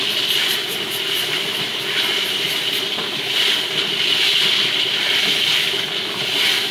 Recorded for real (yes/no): yes